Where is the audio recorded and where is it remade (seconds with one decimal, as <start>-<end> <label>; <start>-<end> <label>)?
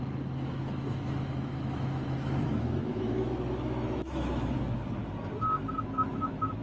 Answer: 0.0-5.0 remade; 5.0-5.8 recorded; 5.8-6.6 remade